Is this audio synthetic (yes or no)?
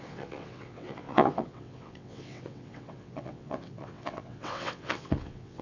yes